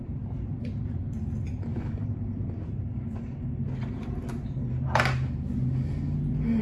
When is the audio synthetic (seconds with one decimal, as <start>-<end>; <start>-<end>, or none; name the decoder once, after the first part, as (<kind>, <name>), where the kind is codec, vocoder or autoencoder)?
1.7-5.0 (vocoder, BigVGAN v2)